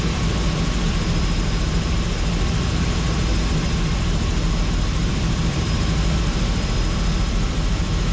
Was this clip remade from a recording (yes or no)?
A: yes